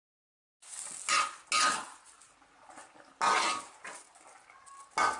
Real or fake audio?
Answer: real